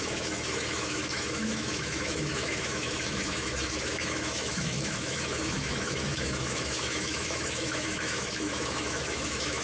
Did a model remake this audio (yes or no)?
yes